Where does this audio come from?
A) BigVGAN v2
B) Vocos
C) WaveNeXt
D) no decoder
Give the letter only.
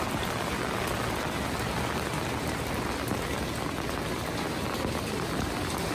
D